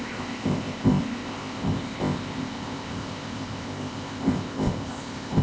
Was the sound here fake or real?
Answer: fake